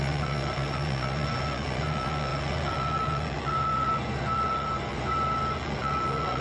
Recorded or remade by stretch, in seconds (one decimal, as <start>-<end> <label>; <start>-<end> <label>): 0.0-6.4 remade

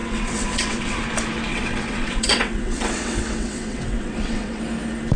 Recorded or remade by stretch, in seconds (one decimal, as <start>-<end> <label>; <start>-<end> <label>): 0.0-1.0 remade; 1.0-1.5 recorded; 1.5-4.6 remade; 4.6-5.2 recorded

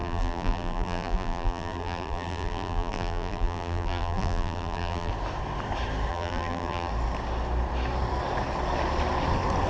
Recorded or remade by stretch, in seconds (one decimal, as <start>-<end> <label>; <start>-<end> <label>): 0.0-5.1 remade; 5.1-6.1 recorded; 6.1-6.9 remade; 6.9-9.7 recorded

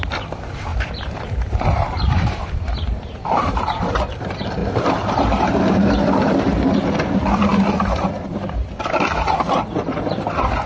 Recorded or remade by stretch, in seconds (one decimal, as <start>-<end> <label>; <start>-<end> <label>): 0.0-0.7 recorded; 0.7-4.0 remade; 4.0-4.6 recorded; 4.6-5.5 remade; 5.5-10.7 recorded

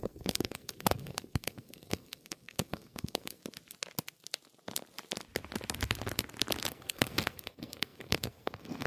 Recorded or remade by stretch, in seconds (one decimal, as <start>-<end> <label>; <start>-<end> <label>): 0.0-3.4 remade; 3.4-6.7 recorded; 6.7-8.9 remade

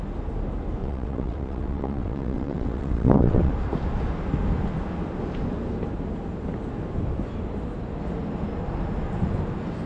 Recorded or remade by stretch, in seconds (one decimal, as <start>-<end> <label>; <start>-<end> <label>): 0.0-0.8 recorded; 0.8-3.5 remade; 3.5-9.9 recorded

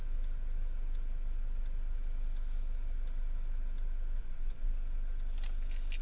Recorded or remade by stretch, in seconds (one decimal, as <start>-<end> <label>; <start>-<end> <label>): 0.0-4.2 recorded; 4.2-4.7 remade; 4.7-6.0 recorded

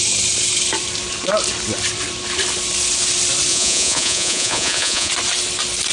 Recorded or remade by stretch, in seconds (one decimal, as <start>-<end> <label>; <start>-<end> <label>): 0.0-3.5 recorded; 3.5-5.1 remade; 5.1-5.9 recorded